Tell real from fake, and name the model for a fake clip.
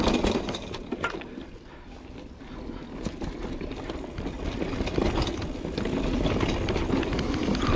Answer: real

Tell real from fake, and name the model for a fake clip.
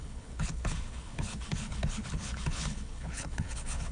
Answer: fake, codec, HILCodec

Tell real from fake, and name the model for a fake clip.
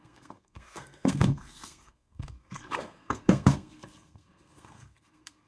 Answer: fake, codec, SNAC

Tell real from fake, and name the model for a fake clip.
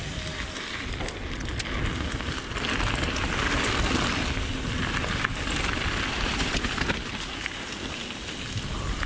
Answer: real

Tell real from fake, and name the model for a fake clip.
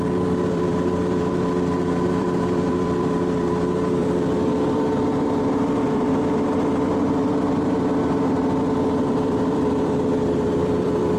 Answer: fake, vocoder, BigVGAN v2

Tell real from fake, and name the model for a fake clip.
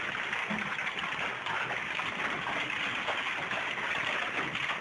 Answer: real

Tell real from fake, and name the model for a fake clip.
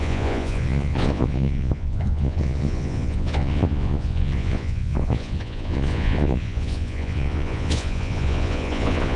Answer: fake, vocoder, Vocos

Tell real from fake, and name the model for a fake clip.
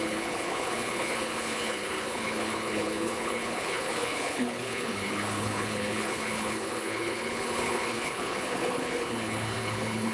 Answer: fake, codec, HILCodec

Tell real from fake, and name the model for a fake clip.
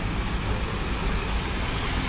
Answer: real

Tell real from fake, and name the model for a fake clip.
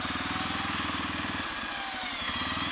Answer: real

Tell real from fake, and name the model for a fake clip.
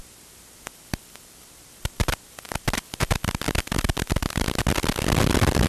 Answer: real